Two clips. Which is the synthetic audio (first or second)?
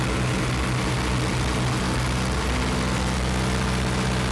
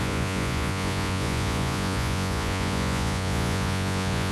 second